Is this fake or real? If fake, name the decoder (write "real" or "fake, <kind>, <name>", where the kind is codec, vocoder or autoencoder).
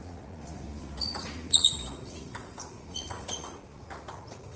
fake, vocoder, Vocos